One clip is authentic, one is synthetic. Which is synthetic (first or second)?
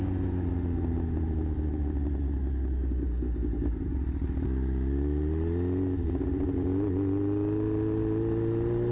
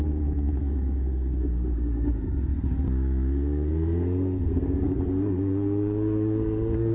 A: second